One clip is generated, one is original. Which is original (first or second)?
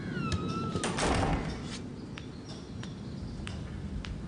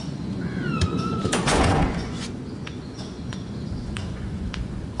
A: first